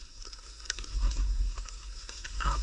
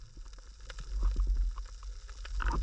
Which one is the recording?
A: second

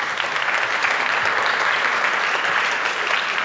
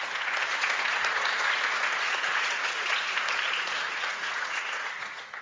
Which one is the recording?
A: first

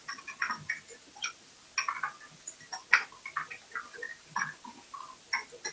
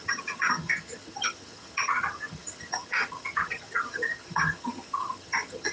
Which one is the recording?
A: first